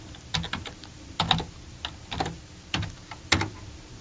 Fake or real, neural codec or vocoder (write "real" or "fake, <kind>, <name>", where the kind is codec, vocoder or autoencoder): real